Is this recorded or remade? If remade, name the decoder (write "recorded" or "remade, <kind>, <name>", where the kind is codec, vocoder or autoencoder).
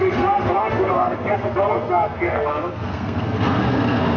remade, codec, SNAC